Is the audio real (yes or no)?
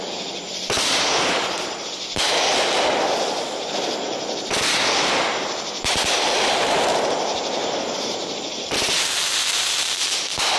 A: no